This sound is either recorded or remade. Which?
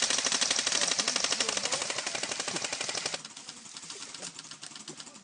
recorded